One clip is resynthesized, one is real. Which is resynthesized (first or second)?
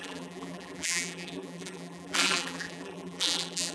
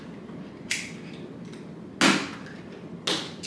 first